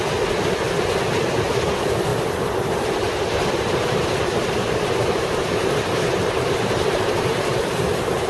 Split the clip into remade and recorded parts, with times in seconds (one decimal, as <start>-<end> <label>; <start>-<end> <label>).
0.0-2.1 recorded; 2.1-7.1 remade; 7.1-7.5 recorded; 7.5-8.3 remade